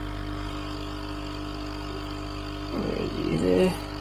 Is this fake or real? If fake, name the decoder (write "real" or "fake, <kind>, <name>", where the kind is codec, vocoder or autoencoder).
real